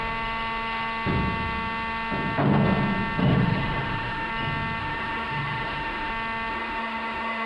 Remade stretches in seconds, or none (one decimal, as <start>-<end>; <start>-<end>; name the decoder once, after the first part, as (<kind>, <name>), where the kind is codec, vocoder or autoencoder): 3.2-4.3 (autoencoder, DAC-VAE); 4.8-6.1; 6.5-7.5